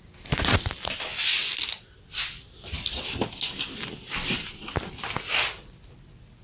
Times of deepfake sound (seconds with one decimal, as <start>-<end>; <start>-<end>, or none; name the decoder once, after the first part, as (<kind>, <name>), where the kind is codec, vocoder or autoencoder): none